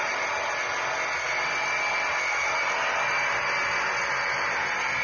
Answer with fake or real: real